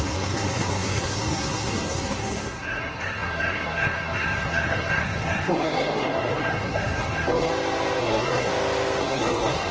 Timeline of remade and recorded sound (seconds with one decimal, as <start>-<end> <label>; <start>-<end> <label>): 0.0-7.5 remade; 7.5-8.0 recorded; 8.0-8.5 remade; 8.5-9.0 recorded; 9.0-9.7 remade